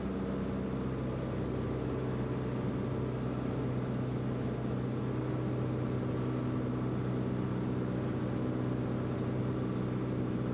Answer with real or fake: real